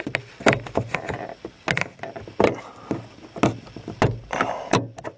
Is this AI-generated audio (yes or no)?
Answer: no